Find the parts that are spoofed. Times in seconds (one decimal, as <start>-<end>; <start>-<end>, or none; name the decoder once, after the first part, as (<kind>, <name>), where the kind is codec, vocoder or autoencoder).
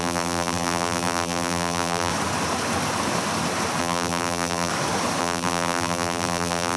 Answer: 0.0-2.1 (vocoder, BigVGAN v2); 3.8-4.7; 5.2-6.8